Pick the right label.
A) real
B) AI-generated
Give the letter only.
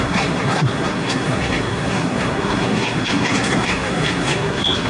B